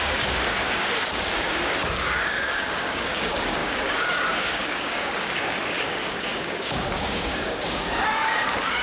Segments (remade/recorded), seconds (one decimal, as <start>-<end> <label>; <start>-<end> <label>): 0.0-8.8 remade